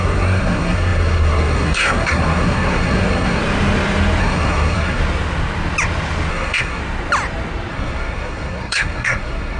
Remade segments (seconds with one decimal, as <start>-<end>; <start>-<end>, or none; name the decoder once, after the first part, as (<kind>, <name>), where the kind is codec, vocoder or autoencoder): 0.0-3.4 (codec, SNAC); 4.2-5.0; 6.3-6.8; 7.7-9.6